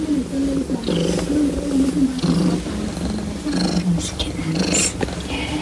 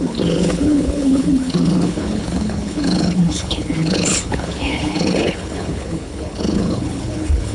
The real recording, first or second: first